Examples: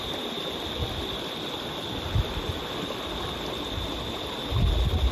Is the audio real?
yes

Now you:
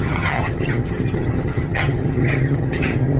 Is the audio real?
no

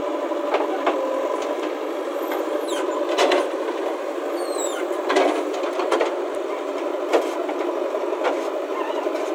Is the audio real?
yes